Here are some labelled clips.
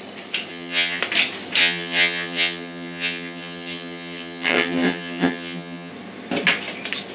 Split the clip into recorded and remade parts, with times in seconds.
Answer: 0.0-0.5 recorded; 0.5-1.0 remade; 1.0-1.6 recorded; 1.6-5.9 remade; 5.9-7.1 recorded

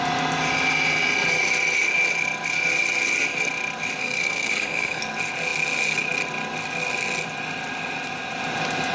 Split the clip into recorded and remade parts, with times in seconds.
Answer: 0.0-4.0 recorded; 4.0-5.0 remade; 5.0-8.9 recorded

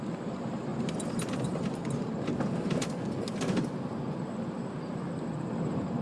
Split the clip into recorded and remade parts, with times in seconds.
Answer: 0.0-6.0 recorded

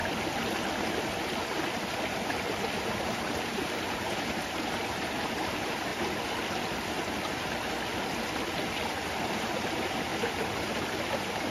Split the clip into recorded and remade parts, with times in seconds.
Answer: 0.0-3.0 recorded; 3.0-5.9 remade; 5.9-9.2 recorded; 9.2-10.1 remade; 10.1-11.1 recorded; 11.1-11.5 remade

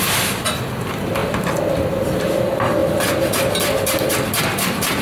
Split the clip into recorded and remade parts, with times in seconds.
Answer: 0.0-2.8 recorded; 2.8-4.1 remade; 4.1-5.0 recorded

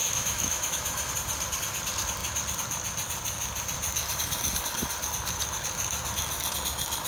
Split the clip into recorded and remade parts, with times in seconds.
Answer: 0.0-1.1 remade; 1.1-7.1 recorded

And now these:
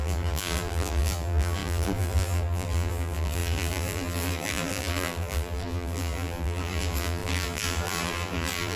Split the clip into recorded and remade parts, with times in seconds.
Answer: 0.0-8.8 remade